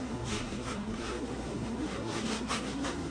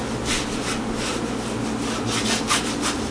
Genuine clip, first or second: second